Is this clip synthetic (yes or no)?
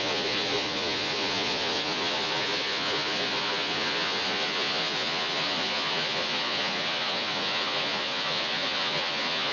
yes